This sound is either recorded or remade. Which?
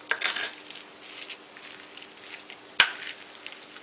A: recorded